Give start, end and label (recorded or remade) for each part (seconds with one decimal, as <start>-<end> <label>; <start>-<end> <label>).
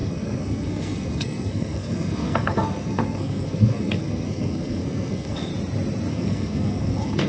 0.0-5.5 remade; 5.5-6.1 recorded; 6.1-7.3 remade